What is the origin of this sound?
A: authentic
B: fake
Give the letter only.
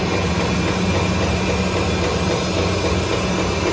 A